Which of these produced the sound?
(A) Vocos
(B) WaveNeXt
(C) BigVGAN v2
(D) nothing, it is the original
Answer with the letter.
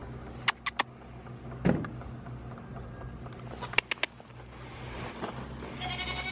D